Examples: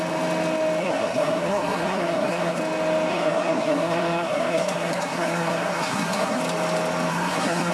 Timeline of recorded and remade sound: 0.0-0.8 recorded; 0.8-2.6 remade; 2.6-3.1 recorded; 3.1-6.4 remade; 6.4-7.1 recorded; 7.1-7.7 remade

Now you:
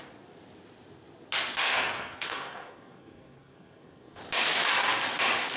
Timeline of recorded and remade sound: 0.0-1.6 recorded; 1.6-4.2 remade; 4.2-5.6 recorded

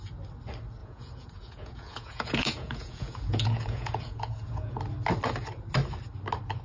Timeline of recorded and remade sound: 0.0-0.8 recorded; 0.8-4.8 remade; 4.8-6.6 recorded

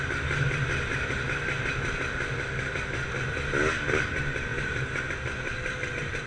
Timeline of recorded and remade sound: 0.0-4.5 recorded; 4.5-5.1 remade; 5.1-6.3 recorded

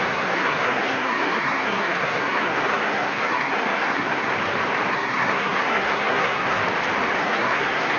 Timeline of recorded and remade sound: 0.0-4.3 remade; 4.3-4.9 recorded; 4.9-6.6 remade; 6.6-7.2 recorded; 7.2-8.0 remade

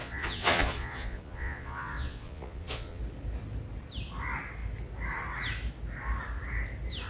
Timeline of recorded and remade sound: 0.0-3.0 remade; 3.0-7.1 recorded